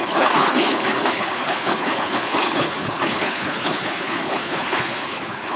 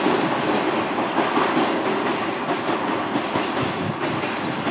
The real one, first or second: second